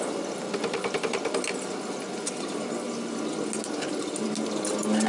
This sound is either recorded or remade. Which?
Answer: recorded